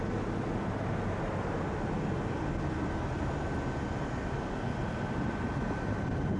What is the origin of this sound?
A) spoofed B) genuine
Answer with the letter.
B